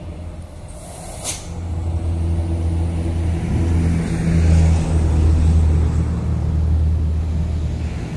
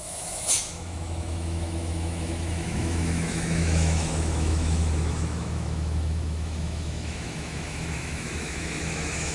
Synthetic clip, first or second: second